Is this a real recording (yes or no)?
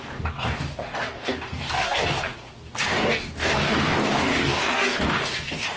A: no